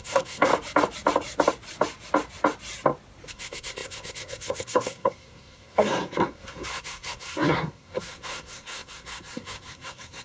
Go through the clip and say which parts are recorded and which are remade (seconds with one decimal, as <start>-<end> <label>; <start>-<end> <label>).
0.0-0.5 remade; 0.5-3.3 recorded; 3.3-10.2 remade